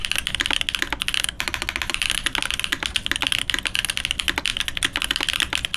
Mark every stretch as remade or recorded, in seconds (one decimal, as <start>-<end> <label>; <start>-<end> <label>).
0.0-5.8 recorded